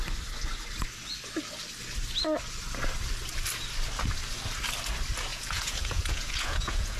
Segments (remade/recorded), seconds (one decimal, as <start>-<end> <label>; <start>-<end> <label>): 0.0-5.3 recorded; 5.3-7.0 remade